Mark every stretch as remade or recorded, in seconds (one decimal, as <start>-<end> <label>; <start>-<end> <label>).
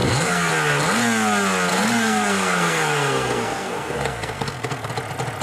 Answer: 0.0-0.5 remade; 0.5-1.7 recorded; 1.7-4.9 remade; 4.9-5.4 recorded